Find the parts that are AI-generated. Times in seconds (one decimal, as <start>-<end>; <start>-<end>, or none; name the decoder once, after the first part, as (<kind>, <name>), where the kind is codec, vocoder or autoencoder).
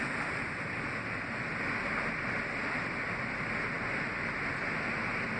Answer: none